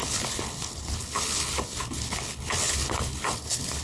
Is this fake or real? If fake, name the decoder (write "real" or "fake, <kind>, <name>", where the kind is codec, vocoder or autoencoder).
fake, codec, HILCodec